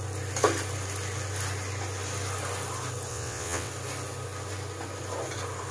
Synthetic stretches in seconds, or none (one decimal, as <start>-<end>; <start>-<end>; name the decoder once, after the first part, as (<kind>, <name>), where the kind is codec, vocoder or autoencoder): 3.1-3.7 (vocoder, WaveNeXt)